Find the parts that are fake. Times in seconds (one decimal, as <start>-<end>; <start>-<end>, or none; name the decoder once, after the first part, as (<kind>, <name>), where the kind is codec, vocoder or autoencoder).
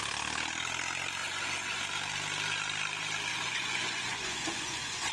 1.2-1.8 (vocoder, Vocos); 3.3-5.1